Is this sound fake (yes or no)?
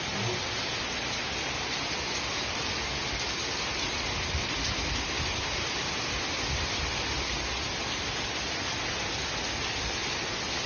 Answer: no